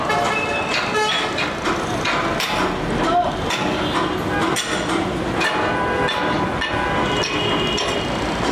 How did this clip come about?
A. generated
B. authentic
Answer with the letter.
B